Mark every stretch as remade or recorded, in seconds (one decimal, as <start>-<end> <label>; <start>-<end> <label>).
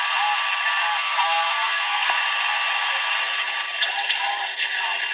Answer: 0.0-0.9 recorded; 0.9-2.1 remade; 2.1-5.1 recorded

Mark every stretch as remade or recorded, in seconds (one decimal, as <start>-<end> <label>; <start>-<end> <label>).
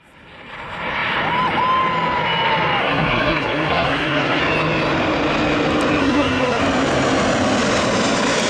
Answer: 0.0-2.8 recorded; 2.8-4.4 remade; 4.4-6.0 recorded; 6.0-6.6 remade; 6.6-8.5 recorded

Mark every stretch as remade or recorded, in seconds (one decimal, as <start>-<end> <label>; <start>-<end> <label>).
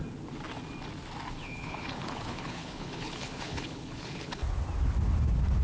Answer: 0.0-1.4 recorded; 1.4-4.5 remade; 4.5-5.6 recorded